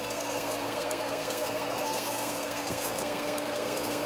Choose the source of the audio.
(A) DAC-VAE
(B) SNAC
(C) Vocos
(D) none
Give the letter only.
B